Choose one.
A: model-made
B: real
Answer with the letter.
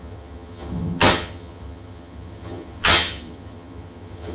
A